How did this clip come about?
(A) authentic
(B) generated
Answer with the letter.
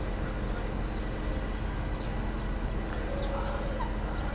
A